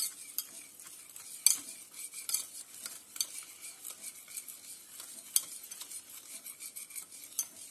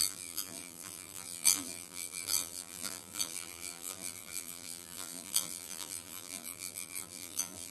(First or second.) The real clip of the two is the first